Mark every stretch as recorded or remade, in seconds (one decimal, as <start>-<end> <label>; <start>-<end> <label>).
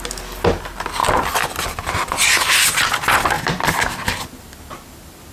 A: 0.0-5.3 recorded